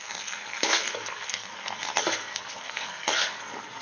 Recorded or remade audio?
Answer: remade